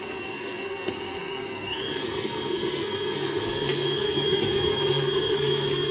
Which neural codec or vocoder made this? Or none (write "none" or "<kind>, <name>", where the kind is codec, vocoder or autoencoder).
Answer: codec, SNAC